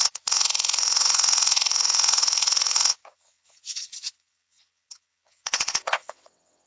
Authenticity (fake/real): fake